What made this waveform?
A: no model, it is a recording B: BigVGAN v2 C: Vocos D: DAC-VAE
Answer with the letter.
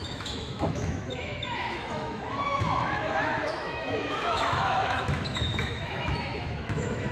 D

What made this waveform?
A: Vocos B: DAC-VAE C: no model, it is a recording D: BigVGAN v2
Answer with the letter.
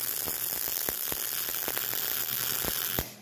C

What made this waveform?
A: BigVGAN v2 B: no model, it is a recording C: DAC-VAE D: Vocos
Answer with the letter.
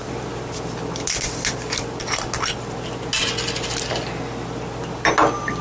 B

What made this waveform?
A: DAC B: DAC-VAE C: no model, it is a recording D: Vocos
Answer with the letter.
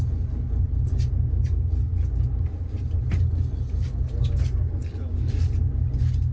C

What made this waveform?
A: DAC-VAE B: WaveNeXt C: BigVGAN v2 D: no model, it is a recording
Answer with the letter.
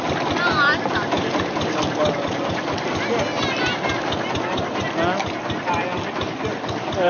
D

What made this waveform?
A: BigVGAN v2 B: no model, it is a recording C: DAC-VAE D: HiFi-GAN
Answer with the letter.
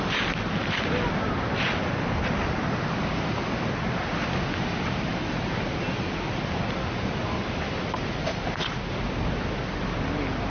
B